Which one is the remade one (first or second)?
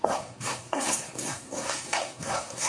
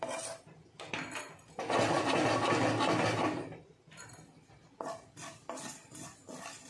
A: first